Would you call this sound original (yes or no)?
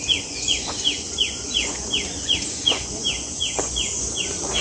no